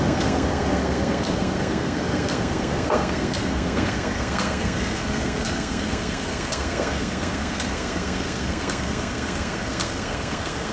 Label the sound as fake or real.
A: fake